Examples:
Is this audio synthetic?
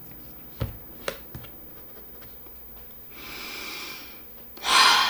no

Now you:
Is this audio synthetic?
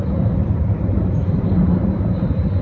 yes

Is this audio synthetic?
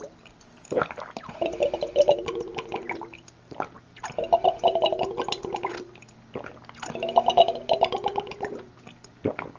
no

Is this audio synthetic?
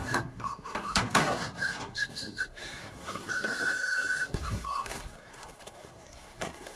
yes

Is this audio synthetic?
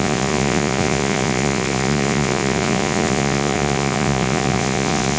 yes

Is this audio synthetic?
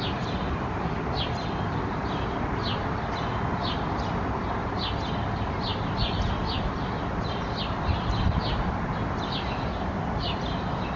no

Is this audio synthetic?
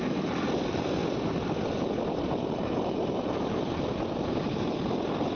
no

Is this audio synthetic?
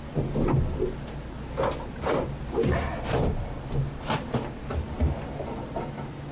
no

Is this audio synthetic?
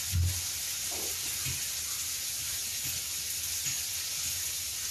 no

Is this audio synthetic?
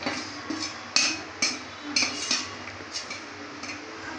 no